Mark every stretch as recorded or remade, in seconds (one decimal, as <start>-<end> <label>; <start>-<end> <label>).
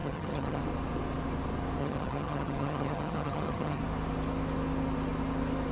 0.0-0.6 remade; 0.6-1.8 recorded; 1.8-3.8 remade; 3.8-5.7 recorded